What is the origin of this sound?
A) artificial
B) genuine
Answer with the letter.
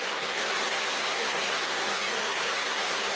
A